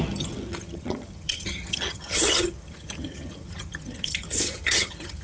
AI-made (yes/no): yes